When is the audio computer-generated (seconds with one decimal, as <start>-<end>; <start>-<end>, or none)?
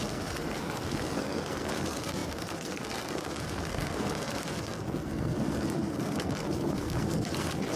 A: 0.0-7.8